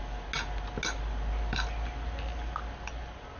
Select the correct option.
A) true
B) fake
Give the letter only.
A